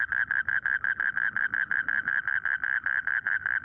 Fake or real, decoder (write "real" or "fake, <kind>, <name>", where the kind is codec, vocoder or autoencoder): real